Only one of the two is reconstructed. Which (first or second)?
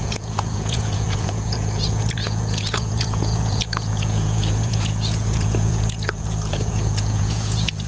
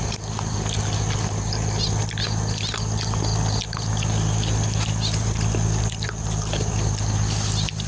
first